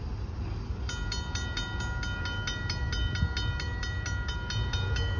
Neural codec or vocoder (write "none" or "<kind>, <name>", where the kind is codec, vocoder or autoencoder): none